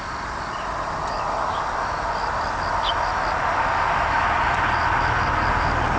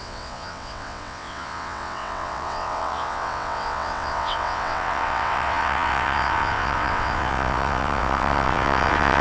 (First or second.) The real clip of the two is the first